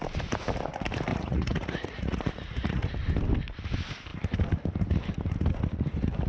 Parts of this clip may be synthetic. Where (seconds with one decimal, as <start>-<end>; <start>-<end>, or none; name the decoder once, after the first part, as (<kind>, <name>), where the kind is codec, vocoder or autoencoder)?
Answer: 1.1-2.9 (vocoder, Vocos)